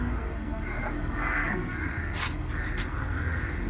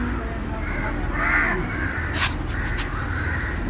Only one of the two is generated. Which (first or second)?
first